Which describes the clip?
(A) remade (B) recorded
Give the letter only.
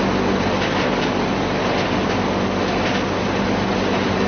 B